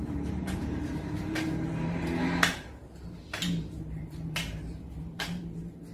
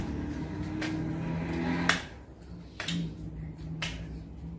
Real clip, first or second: second